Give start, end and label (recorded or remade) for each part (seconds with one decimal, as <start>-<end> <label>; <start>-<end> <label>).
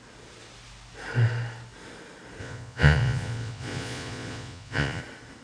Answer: 0.0-2.4 recorded; 2.4-5.0 remade; 5.0-5.4 recorded